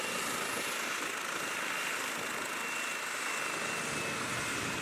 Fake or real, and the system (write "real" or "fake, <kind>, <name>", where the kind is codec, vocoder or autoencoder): real